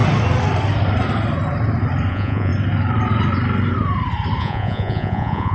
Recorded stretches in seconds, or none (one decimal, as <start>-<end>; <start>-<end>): 0.0-2.1; 2.5-4.4